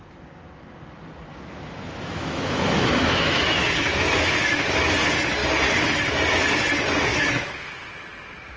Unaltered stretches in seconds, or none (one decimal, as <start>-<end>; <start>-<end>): 0.0-1.3; 4.8-7.1; 7.9-8.6